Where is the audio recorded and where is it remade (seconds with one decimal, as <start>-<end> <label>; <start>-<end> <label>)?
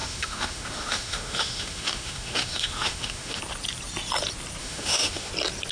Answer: 0.0-3.4 remade; 3.4-4.6 recorded; 4.6-5.3 remade; 5.3-5.7 recorded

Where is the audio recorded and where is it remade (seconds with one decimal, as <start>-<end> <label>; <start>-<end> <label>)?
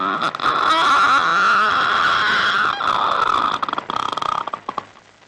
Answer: 0.0-5.3 recorded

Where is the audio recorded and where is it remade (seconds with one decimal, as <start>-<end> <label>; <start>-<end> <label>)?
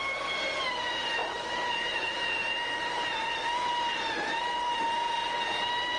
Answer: 0.0-1.2 recorded; 1.2-4.8 remade; 4.8-6.0 recorded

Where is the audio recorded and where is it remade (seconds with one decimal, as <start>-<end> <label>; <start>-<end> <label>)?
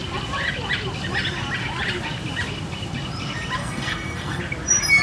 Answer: 0.0-3.6 recorded; 3.6-4.4 remade; 4.4-5.0 recorded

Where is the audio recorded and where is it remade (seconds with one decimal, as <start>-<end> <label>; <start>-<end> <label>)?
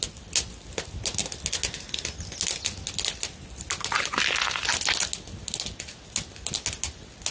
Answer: 0.0-7.3 recorded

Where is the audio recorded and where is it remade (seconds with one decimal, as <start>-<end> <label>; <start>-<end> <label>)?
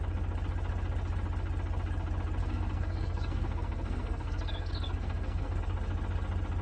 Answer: 0.0-2.4 recorded; 2.4-5.6 remade; 5.6-6.6 recorded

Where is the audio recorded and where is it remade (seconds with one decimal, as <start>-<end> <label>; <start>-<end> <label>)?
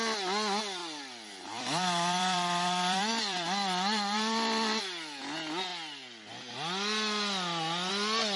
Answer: 0.0-0.8 recorded; 0.8-4.8 remade; 4.8-8.4 recorded